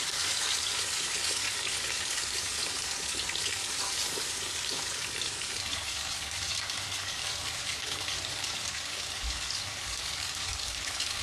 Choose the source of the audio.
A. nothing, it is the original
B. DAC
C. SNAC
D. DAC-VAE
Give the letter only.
B